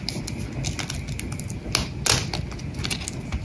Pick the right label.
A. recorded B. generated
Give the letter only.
A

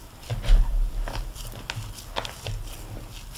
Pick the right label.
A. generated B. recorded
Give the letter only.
B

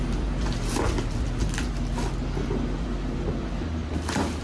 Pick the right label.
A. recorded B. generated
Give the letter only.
A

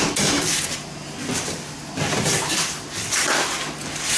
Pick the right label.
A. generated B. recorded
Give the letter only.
B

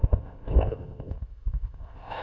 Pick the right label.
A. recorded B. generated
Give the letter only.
B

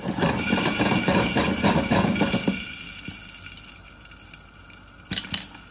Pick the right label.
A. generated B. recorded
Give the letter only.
B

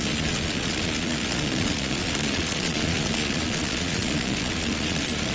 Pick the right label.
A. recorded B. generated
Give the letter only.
B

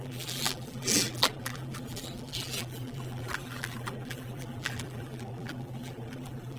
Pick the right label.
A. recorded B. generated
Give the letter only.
B